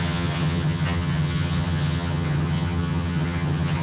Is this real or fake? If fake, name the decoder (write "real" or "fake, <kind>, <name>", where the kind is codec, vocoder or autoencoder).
fake, vocoder, HiFi-GAN